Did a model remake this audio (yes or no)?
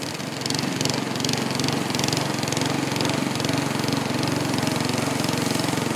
no